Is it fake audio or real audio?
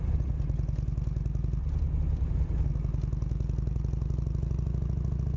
real